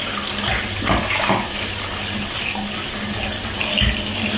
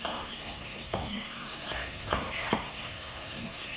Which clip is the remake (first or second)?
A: second